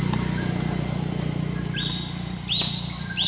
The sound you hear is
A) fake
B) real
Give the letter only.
B